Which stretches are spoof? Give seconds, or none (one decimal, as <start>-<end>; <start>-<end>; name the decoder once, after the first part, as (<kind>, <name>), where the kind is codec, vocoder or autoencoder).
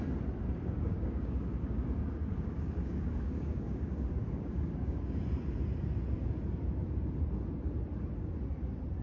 0.4-5.2 (codec, DAC)